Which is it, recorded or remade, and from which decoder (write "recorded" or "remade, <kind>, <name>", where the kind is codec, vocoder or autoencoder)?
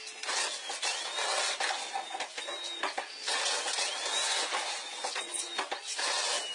recorded